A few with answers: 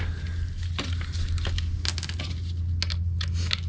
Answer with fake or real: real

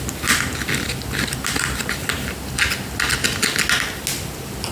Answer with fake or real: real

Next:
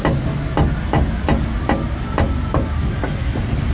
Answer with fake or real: real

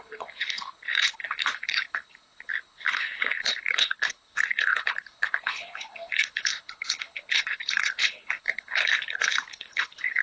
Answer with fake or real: fake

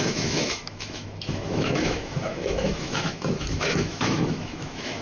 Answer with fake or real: fake